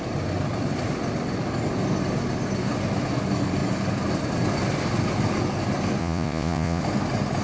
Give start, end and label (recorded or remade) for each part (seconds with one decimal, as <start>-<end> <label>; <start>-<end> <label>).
0.0-6.0 recorded; 6.0-6.8 remade; 6.8-7.4 recorded